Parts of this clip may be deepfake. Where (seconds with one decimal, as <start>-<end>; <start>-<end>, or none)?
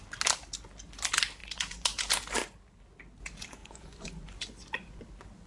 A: 1.4-2.0; 3.6-5.0